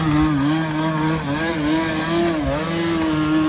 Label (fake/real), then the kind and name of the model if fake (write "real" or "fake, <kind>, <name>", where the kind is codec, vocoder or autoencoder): real